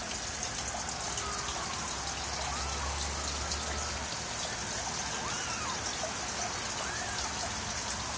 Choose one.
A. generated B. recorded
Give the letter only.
B